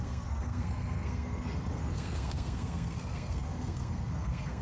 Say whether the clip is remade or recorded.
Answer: remade